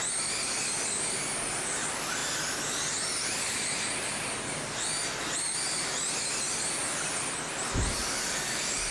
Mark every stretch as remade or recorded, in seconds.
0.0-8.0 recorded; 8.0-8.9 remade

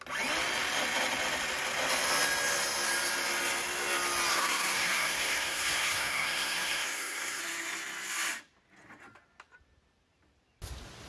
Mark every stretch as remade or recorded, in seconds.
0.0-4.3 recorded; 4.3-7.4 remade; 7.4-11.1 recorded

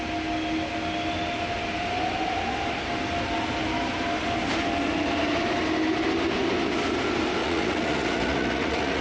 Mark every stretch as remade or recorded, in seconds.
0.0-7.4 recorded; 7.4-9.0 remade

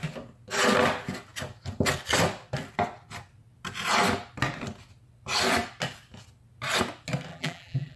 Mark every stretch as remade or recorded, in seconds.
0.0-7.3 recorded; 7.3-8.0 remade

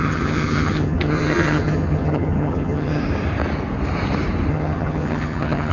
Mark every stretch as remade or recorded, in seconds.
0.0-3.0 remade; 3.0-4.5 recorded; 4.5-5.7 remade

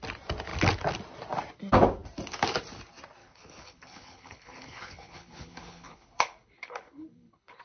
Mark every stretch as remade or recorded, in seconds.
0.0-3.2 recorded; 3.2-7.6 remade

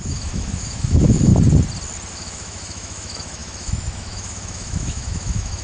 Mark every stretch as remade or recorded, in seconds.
0.0-1.3 remade; 1.3-2.1 recorded; 2.1-5.6 remade